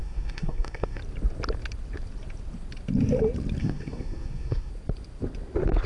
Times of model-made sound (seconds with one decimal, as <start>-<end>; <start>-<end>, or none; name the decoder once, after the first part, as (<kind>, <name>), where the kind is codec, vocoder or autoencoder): 0.0-1.0 (codec, SNAC); 3.6-4.7